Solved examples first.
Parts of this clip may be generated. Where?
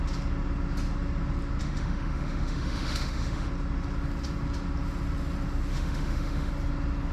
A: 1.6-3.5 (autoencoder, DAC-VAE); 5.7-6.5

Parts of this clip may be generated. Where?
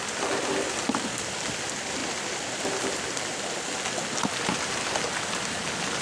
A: none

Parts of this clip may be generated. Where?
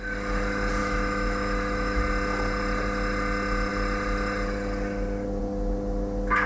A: 0.8-2.0 (autoencoder, DAC-VAE)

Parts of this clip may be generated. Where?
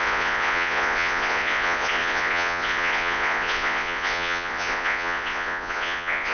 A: 0.0-6.3 (vocoder, Vocos)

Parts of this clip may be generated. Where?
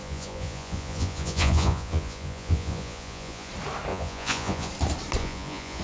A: 0.0-3.5 (vocoder, Vocos); 3.9-4.7; 5.2-5.8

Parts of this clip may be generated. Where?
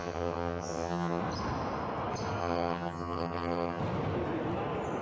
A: 0.0-1.2 (vocoder, HiFi-GAN); 2.4-3.8